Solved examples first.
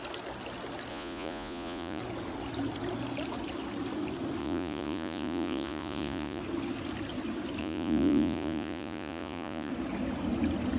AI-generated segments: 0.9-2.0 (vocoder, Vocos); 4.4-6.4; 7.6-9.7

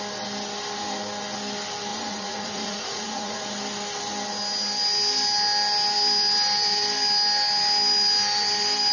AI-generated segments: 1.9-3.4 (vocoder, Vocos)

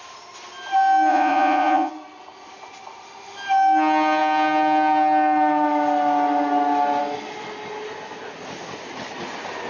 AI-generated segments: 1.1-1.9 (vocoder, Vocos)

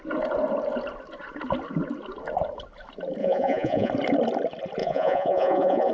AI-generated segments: 3.2-3.9 (vocoder, Vocos); 4.8-5.9